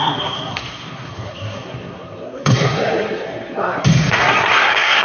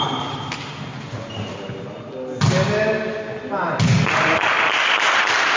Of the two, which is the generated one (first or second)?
first